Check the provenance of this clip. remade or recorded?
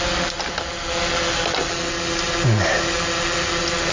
recorded